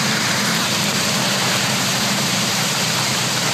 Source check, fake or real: fake